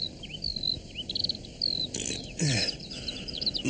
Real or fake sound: real